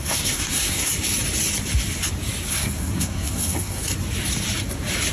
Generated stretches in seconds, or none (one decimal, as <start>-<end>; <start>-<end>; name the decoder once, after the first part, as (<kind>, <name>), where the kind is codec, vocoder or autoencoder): 0.0-0.9 (codec, SNAC); 2.5-3.8